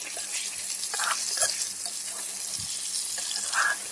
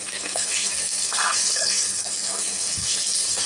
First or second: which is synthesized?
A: second